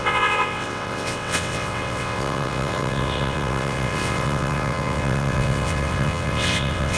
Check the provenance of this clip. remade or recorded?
remade